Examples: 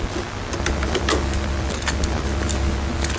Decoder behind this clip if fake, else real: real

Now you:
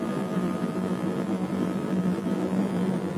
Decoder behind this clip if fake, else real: fake, vocoder, BigVGAN v2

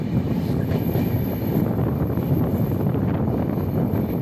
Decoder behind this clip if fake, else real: real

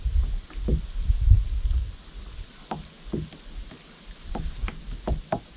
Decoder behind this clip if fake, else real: real